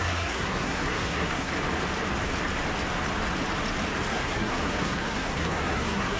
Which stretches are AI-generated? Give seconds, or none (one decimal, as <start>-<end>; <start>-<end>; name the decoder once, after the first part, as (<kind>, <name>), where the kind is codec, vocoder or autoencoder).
0.0-1.5 (codec, SNAC); 4.1-6.2